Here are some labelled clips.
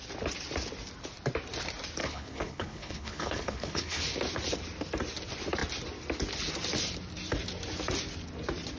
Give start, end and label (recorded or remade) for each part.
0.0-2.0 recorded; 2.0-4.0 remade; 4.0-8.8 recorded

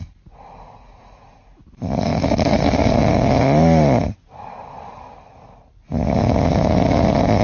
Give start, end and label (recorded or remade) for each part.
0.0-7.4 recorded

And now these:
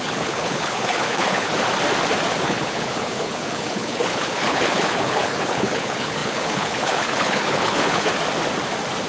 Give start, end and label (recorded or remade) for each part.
0.0-1.5 remade; 1.5-2.3 recorded; 2.3-8.1 remade; 8.1-9.1 recorded

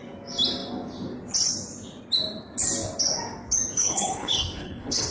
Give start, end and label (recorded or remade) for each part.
0.0-3.8 recorded; 3.8-5.1 remade

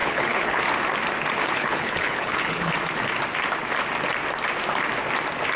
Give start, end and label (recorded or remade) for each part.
0.0-0.6 remade; 0.6-1.4 recorded; 1.4-2.7 remade; 2.7-5.6 recorded

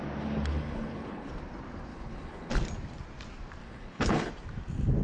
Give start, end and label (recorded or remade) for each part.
0.0-0.5 recorded; 0.5-1.3 remade; 1.3-1.9 recorded; 1.9-2.5 remade; 2.5-3.6 recorded; 3.6-4.3 remade; 4.3-5.0 recorded

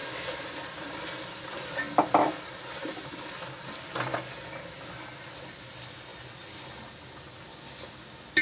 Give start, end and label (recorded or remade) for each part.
0.0-8.4 recorded